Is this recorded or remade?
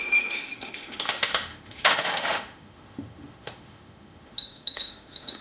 remade